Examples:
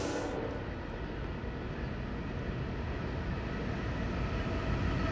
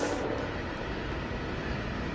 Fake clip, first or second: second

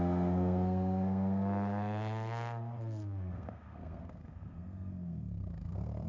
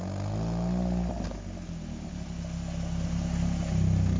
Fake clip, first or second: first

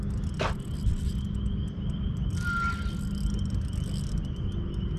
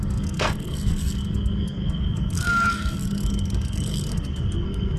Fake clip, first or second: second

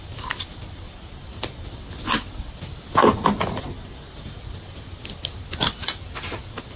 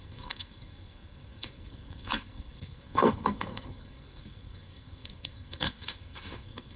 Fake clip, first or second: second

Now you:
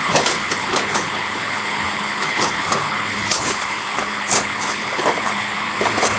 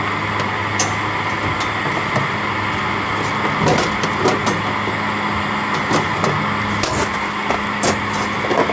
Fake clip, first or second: first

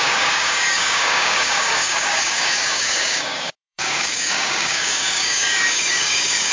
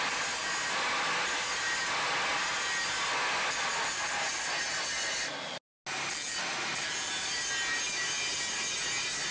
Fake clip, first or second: first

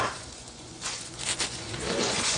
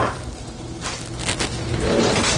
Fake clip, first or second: first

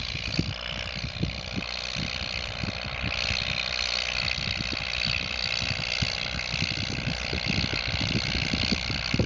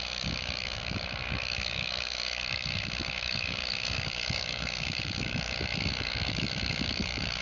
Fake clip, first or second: second